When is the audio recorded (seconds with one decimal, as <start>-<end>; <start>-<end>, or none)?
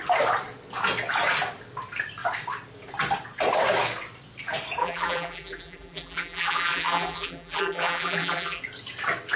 0.0-4.8; 8.6-9.4